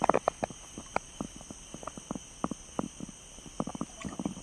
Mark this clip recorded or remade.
recorded